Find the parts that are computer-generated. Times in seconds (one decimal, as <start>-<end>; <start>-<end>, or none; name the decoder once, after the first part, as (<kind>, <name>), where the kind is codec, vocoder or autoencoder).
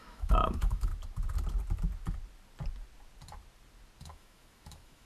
0.0-0.9 (autoencoder, DAC-VAE); 4.0-5.1